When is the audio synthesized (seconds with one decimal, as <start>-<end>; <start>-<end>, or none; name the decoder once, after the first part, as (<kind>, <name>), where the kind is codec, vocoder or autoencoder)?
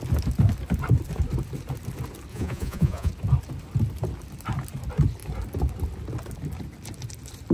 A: 2.3-3.1 (vocoder, Vocos)